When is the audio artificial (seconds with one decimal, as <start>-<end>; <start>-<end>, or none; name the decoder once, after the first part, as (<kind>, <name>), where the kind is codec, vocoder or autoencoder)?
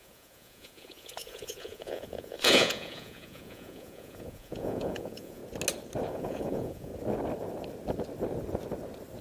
0.0-5.4 (vocoder, Vocos); 6.1-6.9